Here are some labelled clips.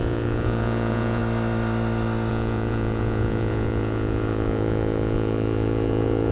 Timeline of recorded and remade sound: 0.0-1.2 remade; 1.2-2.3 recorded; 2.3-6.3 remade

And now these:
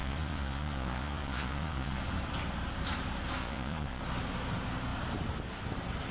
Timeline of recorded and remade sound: 0.0-2.0 remade; 2.0-3.4 recorded; 3.4-4.0 remade; 4.0-6.1 recorded

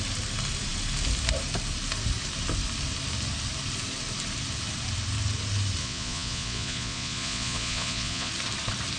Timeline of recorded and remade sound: 0.0-5.8 recorded; 5.8-8.3 remade; 8.3-9.0 recorded

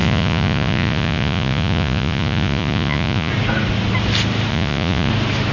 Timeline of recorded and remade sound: 0.0-3.3 remade; 3.3-4.5 recorded; 4.5-5.1 remade; 5.1-5.5 recorded

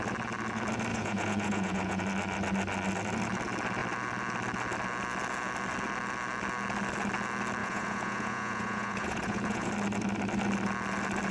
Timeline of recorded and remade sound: 0.0-0.9 recorded; 0.9-2.0 remade; 2.0-7.6 recorded; 7.6-9.7 remade; 9.7-11.3 recorded

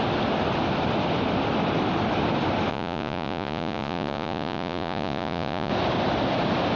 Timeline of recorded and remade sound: 0.0-2.7 recorded; 2.7-5.7 remade; 5.7-6.8 recorded

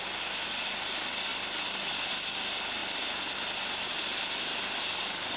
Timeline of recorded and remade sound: 0.0-5.4 recorded